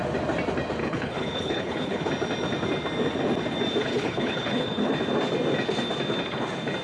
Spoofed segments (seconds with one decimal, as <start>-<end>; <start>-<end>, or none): 0.8-2.1; 3.8-4.9